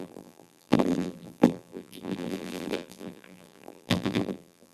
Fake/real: fake